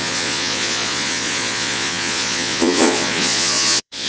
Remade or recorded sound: remade